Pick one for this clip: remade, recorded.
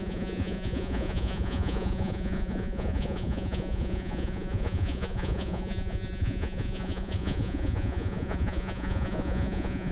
remade